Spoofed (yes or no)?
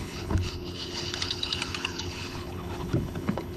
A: yes